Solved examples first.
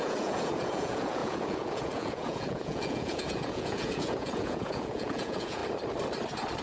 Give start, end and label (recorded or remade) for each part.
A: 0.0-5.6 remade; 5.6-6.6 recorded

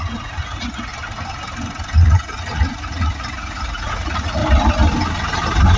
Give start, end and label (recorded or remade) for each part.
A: 0.0-0.9 remade; 0.9-2.0 recorded; 2.0-4.4 remade; 4.4-5.8 recorded

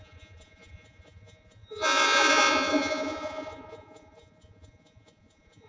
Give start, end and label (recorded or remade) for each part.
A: 0.0-5.7 remade

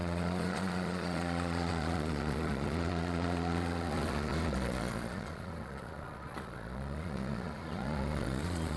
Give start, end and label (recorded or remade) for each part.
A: 0.0-8.8 remade

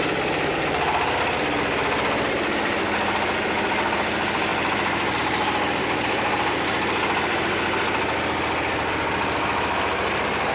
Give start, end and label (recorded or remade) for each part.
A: 0.0-10.5 recorded

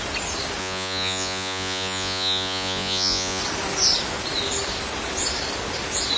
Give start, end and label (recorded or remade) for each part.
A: 0.0-0.6 recorded; 0.6-3.4 remade; 3.4-6.2 recorded

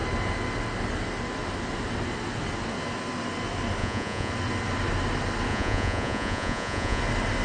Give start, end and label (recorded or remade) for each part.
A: 0.0-3.8 recorded; 3.8-4.3 remade; 4.3-5.5 recorded; 5.5-7.0 remade; 7.0-7.4 recorded

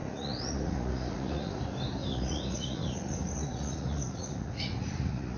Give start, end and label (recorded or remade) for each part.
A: 0.0-1.6 remade; 1.6-2.1 recorded; 2.1-5.4 remade